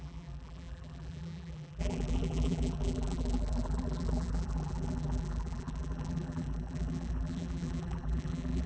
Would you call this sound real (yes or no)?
no